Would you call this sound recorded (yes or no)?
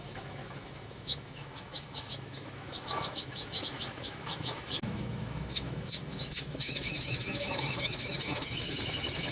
no